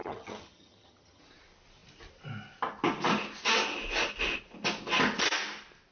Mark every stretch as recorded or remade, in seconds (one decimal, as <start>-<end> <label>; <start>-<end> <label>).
0.0-1.2 remade; 1.2-5.9 recorded

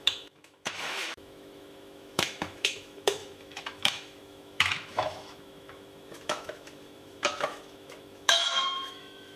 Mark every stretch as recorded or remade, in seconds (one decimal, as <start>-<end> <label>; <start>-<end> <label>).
0.0-9.4 remade